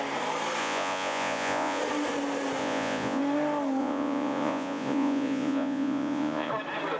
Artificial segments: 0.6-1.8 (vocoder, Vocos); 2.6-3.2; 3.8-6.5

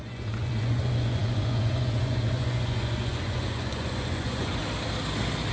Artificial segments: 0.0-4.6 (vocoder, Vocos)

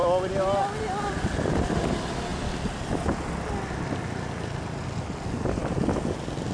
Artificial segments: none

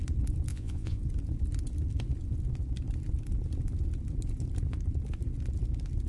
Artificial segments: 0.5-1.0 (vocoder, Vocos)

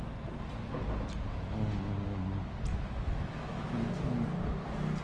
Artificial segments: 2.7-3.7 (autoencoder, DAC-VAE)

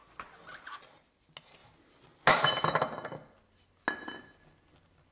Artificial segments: none